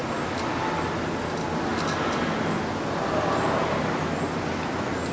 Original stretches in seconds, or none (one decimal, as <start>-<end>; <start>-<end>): 0.0-5.1